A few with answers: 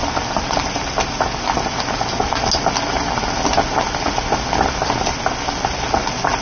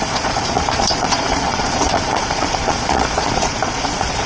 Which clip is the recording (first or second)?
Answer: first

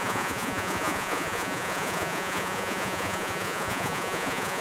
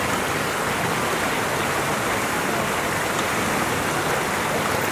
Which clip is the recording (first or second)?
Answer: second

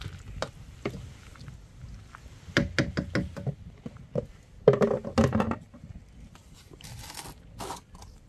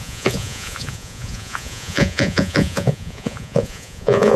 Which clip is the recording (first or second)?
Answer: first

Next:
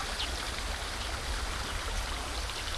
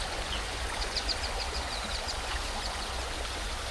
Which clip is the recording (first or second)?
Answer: first